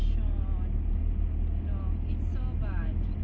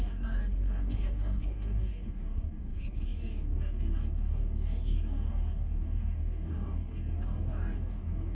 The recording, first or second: first